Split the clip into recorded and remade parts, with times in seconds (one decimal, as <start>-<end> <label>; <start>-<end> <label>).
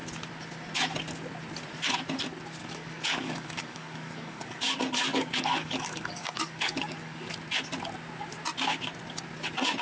0.0-2.6 recorded; 2.6-4.6 remade; 4.6-5.1 recorded; 5.1-7.3 remade; 7.3-9.8 recorded